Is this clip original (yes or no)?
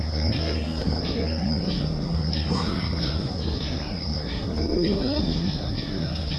no